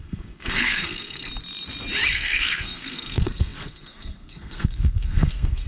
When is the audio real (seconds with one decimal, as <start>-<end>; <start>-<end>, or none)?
1.3-2.1